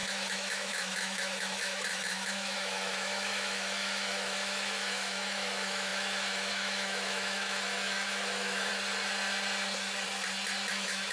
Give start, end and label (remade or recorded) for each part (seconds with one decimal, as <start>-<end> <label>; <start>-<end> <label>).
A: 0.0-8.7 remade; 8.7-10.7 recorded; 10.7-11.1 remade